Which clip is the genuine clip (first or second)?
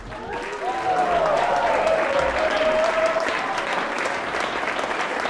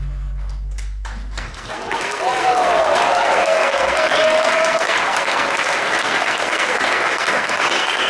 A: first